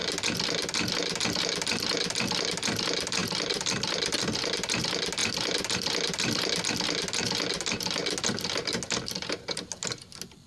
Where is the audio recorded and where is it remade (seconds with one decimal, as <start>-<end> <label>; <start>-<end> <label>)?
0.0-3.2 recorded; 3.2-4.8 remade; 4.8-5.2 recorded; 5.2-6.6 remade; 6.6-10.5 recorded

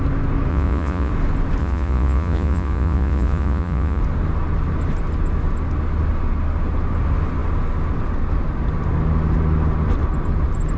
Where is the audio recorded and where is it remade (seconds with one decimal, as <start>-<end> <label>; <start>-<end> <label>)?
0.0-0.5 recorded; 0.5-1.1 remade; 1.1-1.6 recorded; 1.6-4.0 remade; 4.0-10.8 recorded

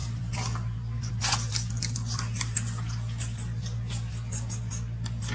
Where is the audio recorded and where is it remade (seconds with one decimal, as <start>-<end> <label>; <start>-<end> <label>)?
0.0-1.1 remade; 1.1-5.3 recorded